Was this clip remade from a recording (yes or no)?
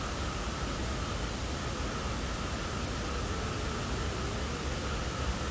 no